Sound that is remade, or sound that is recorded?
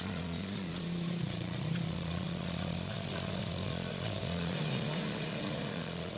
remade